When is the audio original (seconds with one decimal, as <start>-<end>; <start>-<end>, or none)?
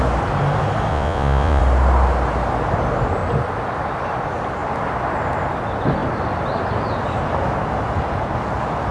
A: 0.0-0.9; 1.6-8.9